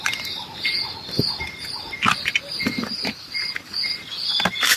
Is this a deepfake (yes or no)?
no